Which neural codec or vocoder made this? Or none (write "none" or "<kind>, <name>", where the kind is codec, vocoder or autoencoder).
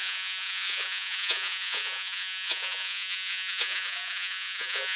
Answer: vocoder, Vocos